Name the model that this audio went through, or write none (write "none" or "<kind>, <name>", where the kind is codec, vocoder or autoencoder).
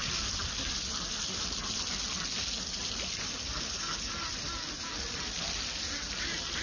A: none